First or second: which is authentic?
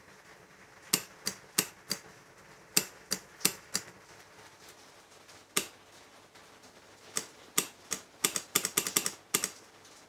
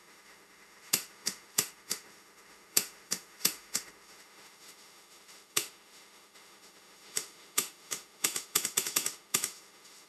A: first